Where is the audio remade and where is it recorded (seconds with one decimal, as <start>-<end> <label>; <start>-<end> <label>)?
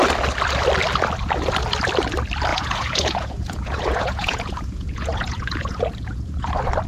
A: 0.0-2.5 recorded; 2.5-6.5 remade; 6.5-6.9 recorded